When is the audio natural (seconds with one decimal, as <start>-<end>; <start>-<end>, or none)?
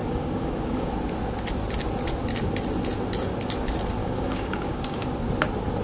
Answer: 0.9-4.0; 5.1-5.8